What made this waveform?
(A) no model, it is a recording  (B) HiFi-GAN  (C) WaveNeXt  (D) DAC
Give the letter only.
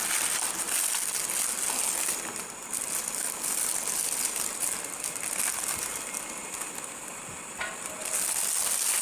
A